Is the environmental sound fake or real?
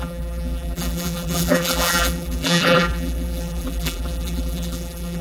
fake